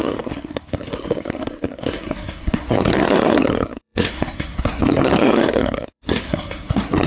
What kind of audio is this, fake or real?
fake